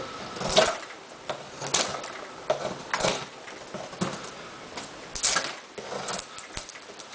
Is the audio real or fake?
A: real